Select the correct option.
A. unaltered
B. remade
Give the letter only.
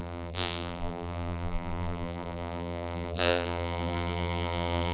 B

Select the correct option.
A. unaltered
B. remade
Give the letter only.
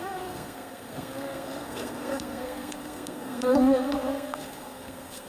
B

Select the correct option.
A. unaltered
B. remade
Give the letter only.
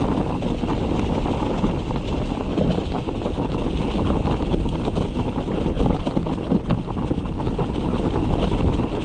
A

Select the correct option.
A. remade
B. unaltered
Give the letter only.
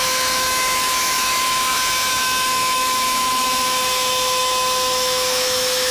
A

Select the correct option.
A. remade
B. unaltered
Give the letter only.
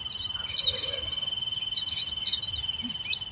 B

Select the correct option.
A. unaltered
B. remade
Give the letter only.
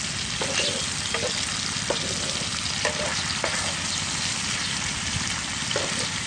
A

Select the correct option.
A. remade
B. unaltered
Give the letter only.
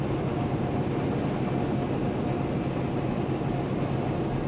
B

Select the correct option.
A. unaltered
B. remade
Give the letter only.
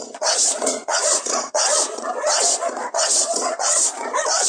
B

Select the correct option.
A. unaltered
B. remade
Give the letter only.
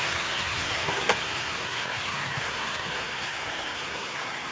B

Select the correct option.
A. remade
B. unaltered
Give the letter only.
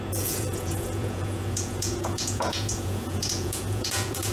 A